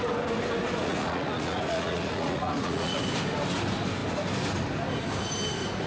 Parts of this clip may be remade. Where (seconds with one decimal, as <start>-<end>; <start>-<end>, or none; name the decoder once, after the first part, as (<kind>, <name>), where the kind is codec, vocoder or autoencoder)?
0.8-3.0 (vocoder, Vocos)